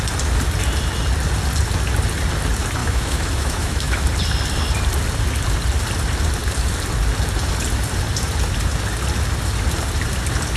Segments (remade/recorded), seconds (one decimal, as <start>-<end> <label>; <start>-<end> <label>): 0.0-2.8 recorded; 2.8-4.0 remade; 4.0-10.6 recorded

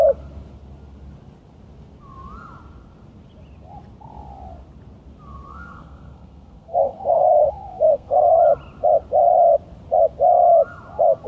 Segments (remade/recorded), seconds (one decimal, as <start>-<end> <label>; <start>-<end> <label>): 0.0-5.5 recorded; 5.5-8.4 remade; 8.4-11.3 recorded